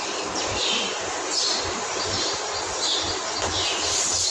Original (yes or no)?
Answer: no